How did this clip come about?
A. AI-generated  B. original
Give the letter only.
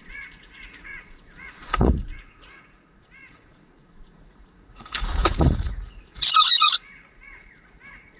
A